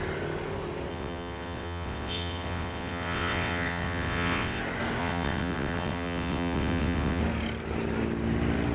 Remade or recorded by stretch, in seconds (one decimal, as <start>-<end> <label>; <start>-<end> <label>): 0.0-0.9 recorded; 0.9-4.6 remade; 4.6-5.0 recorded; 5.0-7.2 remade; 7.2-8.7 recorded